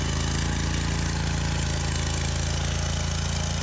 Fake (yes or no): no